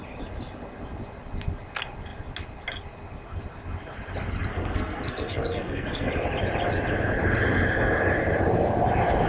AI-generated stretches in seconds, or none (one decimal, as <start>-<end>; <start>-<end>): 4.5-6.1